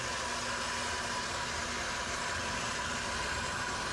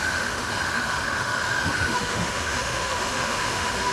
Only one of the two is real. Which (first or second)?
first